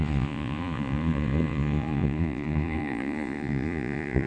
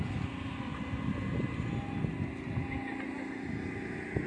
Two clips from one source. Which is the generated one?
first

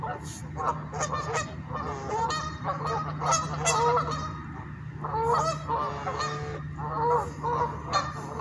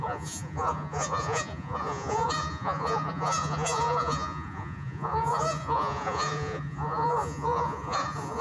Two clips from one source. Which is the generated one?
second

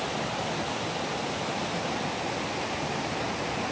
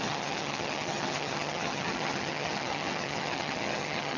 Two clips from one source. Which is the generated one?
second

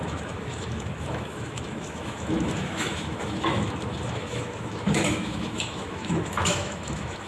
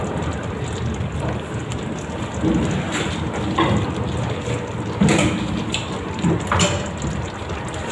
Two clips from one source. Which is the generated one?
first